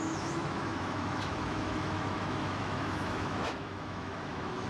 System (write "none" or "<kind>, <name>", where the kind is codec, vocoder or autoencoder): autoencoder, DAC-VAE